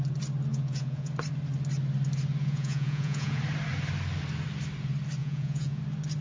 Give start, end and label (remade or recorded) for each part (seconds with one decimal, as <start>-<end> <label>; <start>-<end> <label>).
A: 0.0-0.5 recorded; 0.5-1.1 remade; 1.1-2.4 recorded; 2.4-3.4 remade; 3.4-5.2 recorded; 5.2-5.8 remade; 5.8-6.2 recorded